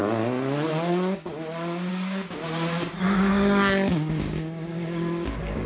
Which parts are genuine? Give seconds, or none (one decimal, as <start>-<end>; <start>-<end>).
0.0-1.9; 2.4-3.0